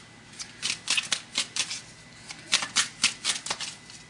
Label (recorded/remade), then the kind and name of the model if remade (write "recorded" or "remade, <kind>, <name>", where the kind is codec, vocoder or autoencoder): recorded